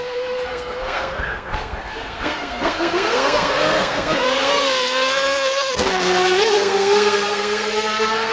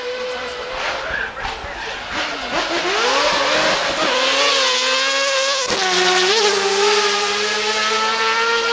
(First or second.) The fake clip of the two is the first